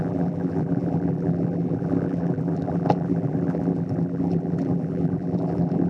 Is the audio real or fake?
fake